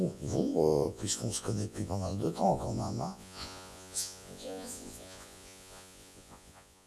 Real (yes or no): no